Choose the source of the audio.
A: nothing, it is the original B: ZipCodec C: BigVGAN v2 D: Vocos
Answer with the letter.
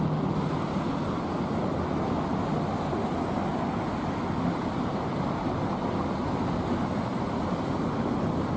A